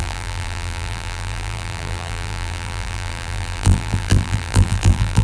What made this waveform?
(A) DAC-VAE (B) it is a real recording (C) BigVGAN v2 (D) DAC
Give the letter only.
C